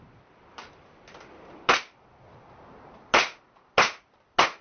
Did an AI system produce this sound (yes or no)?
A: no